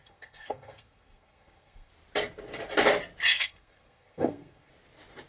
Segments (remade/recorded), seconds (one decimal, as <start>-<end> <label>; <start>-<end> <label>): 0.0-1.9 remade; 1.9-3.3 recorded; 3.3-4.7 remade; 4.7-5.3 recorded